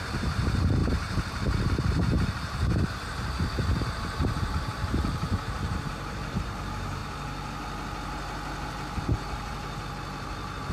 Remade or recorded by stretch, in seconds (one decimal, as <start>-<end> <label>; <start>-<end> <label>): 0.0-7.0 remade; 7.0-10.7 recorded